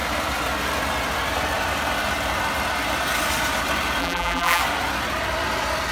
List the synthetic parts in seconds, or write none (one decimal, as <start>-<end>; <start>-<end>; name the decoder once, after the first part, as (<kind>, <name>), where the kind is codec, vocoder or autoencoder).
4.0-4.6 (vocoder, BigVGAN v2)